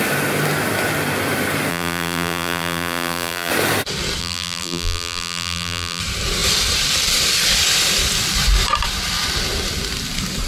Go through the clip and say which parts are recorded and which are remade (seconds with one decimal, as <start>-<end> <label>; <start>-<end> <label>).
0.0-1.7 recorded; 1.7-3.5 remade; 3.5-4.2 recorded; 4.2-6.0 remade; 6.0-10.5 recorded